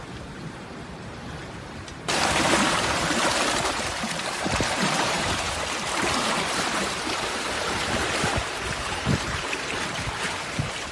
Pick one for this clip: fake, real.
fake